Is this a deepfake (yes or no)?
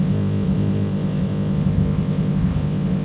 yes